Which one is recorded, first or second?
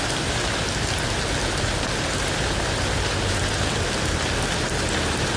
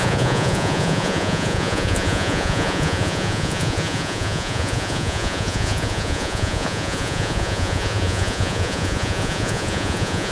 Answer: first